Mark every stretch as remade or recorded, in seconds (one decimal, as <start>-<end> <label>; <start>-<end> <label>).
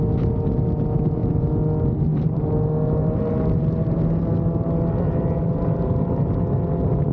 0.0-7.1 recorded